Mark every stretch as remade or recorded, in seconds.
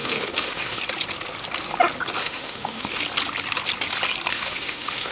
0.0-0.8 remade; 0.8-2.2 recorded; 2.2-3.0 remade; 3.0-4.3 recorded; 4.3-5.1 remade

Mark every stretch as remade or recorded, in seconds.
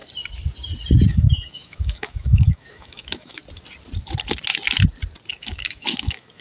0.0-1.1 recorded; 1.1-3.4 remade; 3.4-5.3 recorded; 5.3-6.4 remade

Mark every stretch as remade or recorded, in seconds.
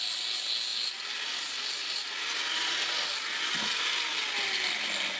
0.0-5.2 recorded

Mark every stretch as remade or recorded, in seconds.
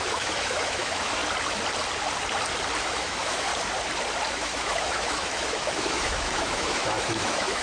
0.0-1.2 remade; 1.2-2.8 recorded; 2.8-3.5 remade; 3.5-4.3 recorded; 4.3-7.6 remade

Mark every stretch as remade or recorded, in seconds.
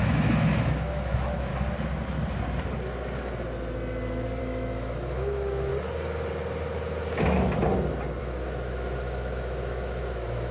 0.0-1.5 remade; 1.5-4.4 recorded; 4.4-5.7 remade; 5.7-8.2 recorded; 8.2-10.5 remade